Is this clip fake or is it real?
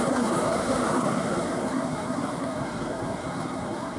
fake